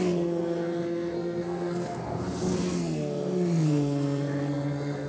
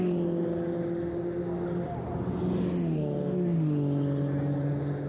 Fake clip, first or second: first